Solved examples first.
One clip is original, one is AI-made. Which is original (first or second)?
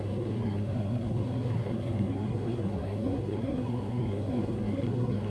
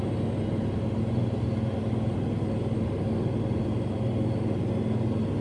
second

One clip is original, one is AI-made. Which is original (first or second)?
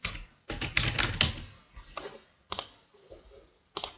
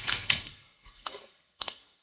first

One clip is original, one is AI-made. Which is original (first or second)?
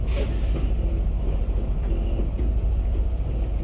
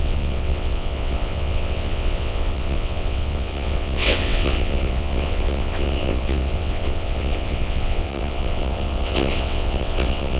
first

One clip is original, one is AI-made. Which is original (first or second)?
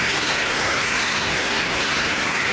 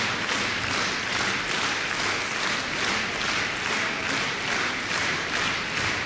second